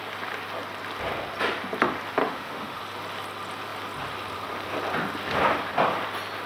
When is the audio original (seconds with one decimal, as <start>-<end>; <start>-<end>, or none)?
0.0-2.2; 2.8-6.5

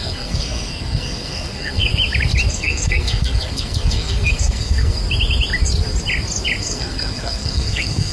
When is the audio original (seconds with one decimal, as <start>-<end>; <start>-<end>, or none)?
1.9-2.5; 5.0-6.6

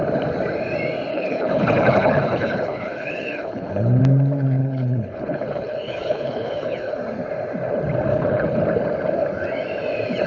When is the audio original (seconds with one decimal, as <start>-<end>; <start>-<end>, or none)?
0.0-1.1; 4.0-4.6; 7.0-8.1; 8.6-10.3

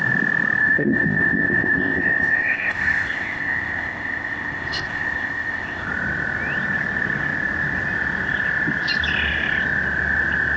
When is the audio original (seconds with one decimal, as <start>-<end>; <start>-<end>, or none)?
0.0-0.6; 5.9-10.6

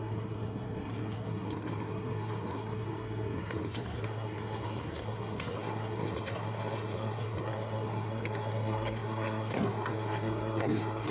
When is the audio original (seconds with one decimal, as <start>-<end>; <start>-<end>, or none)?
none

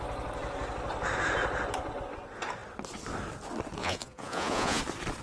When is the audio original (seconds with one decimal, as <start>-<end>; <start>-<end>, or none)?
0.0-3.8; 4.8-5.2

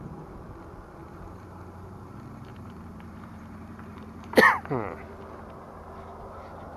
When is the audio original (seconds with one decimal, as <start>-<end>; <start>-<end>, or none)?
0.0-1.0; 5.0-6.8

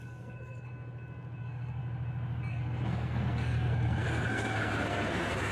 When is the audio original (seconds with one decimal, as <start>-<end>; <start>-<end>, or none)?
0.7-1.4; 1.8-2.5